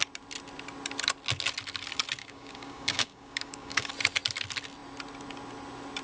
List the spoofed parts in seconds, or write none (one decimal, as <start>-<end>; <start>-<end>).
2.2-3.9